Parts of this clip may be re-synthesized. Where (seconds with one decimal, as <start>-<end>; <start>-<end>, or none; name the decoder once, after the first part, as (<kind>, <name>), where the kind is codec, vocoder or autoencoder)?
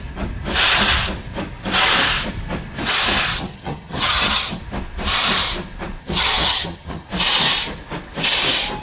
3.3-4.6 (vocoder, HiFi-GAN); 6.0-7.1